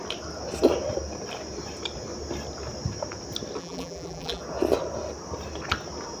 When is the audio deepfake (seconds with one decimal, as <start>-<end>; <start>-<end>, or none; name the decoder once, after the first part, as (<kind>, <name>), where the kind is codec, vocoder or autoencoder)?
3.6-4.4 (vocoder, BigVGAN v2)